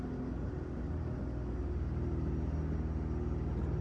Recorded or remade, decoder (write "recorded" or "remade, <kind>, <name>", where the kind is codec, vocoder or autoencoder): recorded